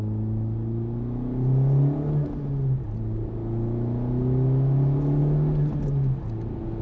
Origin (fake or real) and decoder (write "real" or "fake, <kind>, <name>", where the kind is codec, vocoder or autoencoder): real